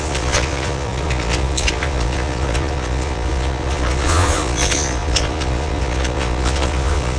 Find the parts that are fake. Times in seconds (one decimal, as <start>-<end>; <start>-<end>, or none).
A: 0.0-7.2